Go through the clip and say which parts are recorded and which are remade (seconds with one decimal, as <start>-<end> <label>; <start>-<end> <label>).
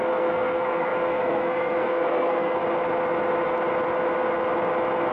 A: 0.0-2.6 remade; 2.6-5.1 recorded